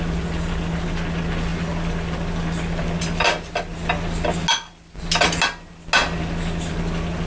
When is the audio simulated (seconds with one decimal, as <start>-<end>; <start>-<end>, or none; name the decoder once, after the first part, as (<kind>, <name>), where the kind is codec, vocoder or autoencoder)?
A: none